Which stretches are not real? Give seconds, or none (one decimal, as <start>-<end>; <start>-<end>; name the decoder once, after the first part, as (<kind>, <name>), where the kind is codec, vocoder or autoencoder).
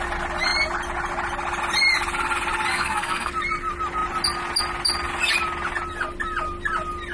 2.7-3.3 (codec, SNAC)